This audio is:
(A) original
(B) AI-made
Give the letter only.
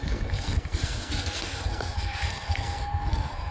B